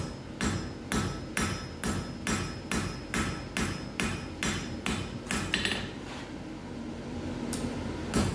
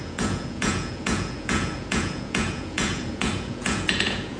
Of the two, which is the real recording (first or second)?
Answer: first